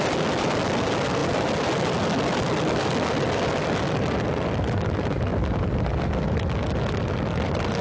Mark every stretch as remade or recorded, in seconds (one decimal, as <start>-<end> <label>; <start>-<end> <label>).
0.0-7.8 recorded